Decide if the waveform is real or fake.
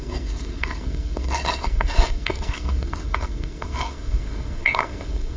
fake